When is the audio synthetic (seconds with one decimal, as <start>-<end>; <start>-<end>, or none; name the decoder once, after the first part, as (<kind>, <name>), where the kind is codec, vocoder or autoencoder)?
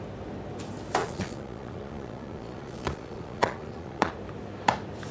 1.0-4.1 (vocoder, Vocos)